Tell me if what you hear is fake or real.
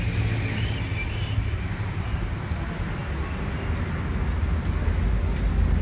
real